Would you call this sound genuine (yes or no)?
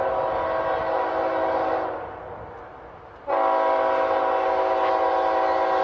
yes